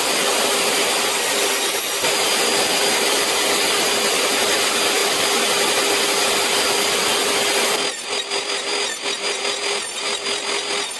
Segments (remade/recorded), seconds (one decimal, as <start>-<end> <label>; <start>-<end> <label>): 0.0-11.0 recorded